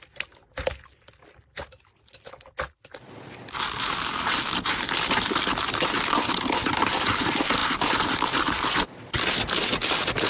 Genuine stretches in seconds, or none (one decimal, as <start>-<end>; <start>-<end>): 0.0-10.3